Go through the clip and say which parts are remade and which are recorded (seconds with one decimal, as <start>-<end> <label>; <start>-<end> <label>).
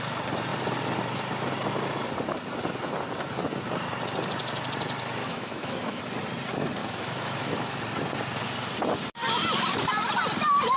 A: 0.0-5.2 recorded; 5.2-6.0 remade; 6.0-6.8 recorded; 6.8-7.8 remade; 7.8-10.8 recorded